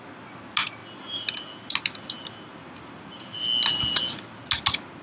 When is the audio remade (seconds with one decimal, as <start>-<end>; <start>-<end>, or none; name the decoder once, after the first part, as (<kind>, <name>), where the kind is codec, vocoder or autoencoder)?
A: none